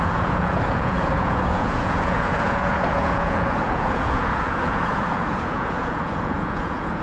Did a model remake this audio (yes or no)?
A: yes